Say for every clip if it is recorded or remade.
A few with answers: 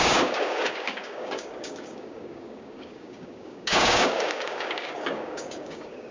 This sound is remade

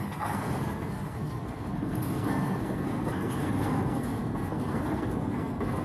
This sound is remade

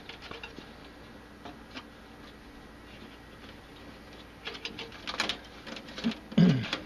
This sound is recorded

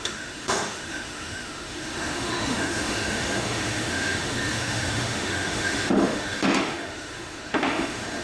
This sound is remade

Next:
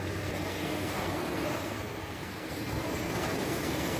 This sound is remade